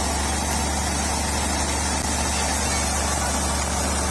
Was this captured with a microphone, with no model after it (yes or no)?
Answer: yes